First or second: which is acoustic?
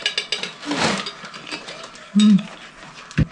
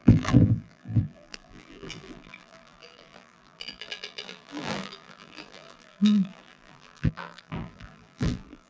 first